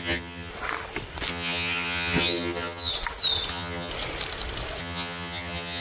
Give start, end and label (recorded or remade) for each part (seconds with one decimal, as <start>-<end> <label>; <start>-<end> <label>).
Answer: 0.0-0.5 remade; 0.5-1.3 recorded; 1.3-2.9 remade; 2.9-3.5 recorded; 3.5-3.9 remade; 3.9-4.8 recorded; 4.8-5.8 remade